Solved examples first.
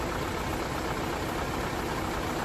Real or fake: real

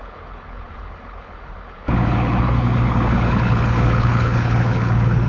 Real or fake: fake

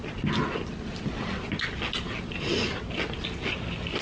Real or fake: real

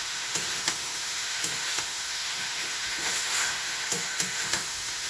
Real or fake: fake